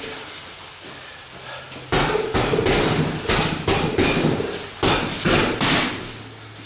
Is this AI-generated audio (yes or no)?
no